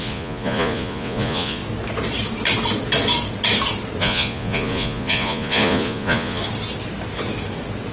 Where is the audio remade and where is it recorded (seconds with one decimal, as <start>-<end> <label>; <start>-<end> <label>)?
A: 0.0-1.6 remade; 1.6-4.0 recorded; 4.0-6.4 remade; 6.4-7.9 recorded